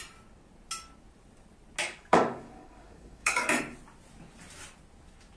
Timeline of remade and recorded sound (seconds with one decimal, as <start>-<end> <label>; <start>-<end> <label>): 0.0-1.8 recorded; 1.8-3.6 remade; 3.6-5.4 recorded